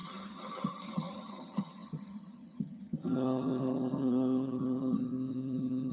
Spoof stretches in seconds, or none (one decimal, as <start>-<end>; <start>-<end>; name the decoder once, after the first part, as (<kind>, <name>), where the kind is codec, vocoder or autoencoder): 0.0-5.9 (vocoder, HiFi-GAN)